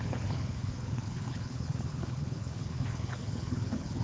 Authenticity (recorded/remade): remade